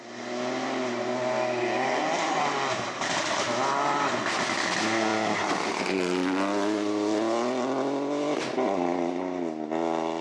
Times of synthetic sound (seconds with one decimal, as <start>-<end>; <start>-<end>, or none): none